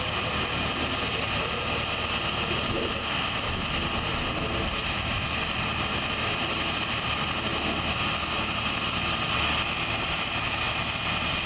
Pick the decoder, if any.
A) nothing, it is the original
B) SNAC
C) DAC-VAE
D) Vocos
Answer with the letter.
A